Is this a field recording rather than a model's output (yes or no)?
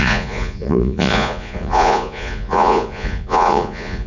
no